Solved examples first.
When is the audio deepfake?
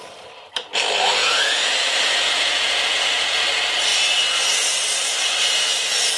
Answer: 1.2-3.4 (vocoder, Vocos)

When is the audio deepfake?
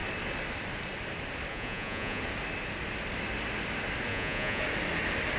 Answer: 1.5-2.2 (vocoder, Vocos); 4.1-4.6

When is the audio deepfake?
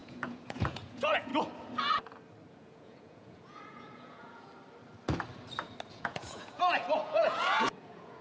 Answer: 0.0-1.3 (vocoder, Vocos); 2.5-4.5; 5.9-8.2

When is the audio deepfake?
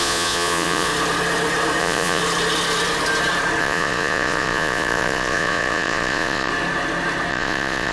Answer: 0.0-0.9 (vocoder, Vocos); 1.8-2.2; 3.6-6.5; 7.3-7.9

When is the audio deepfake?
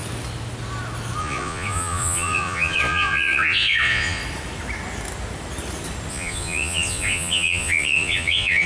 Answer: 1.2-4.2 (vocoder, Vocos); 6.1-8.7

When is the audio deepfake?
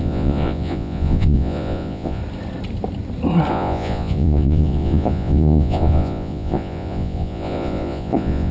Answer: 0.0-2.2 (vocoder, Vocos); 3.5-8.5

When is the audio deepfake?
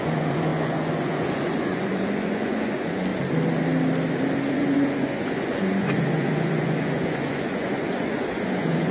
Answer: 0.0-3.1 (vocoder, Vocos); 4.5-8.9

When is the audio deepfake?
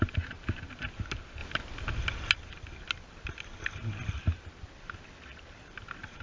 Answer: none